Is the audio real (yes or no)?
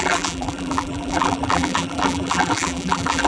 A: no